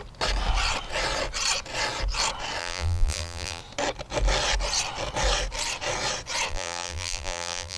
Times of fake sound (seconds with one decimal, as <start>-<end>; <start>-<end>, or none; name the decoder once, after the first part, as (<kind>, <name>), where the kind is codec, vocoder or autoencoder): 2.6-3.6 (vocoder, BigVGAN v2); 6.5-7.8